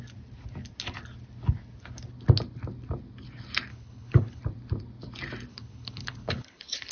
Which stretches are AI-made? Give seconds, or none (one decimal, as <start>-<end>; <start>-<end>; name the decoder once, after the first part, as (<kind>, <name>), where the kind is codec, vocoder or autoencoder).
3.7-4.4 (codec, HILCodec); 5.5-6.9